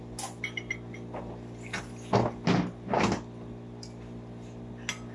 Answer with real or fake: real